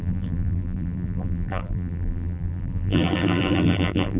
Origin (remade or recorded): remade